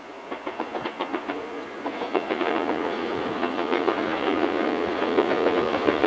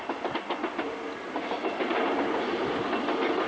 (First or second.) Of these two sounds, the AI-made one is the first